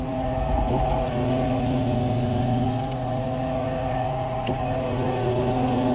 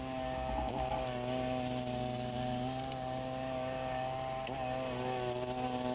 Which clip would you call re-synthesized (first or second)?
first